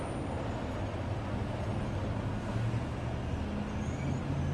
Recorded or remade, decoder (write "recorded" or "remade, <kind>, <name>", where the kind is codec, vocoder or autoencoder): recorded